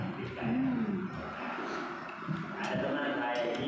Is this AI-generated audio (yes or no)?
no